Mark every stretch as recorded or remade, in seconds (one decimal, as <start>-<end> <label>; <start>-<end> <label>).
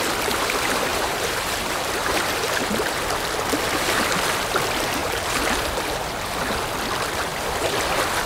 0.0-0.9 recorded; 0.9-2.5 remade; 2.5-5.0 recorded; 5.0-5.7 remade; 5.7-8.3 recorded